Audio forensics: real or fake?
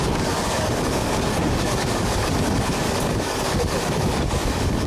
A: fake